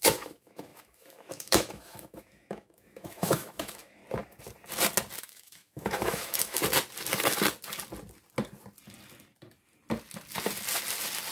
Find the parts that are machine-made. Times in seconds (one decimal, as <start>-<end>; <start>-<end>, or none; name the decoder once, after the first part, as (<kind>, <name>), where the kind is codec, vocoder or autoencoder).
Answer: 0.0-4.0 (autoencoder, DAC-VAE); 5.2-6.6